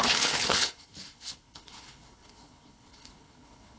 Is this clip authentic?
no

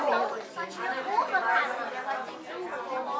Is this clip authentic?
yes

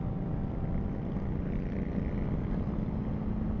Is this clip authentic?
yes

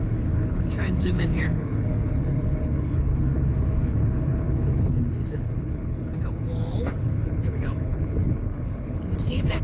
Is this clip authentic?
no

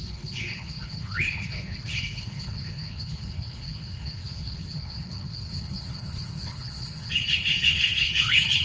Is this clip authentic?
no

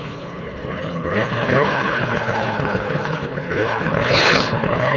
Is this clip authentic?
no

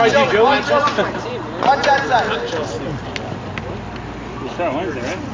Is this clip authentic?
yes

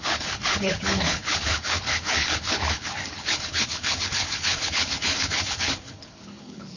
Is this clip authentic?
no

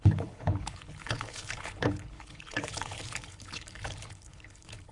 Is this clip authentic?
no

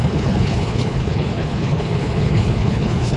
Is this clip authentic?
no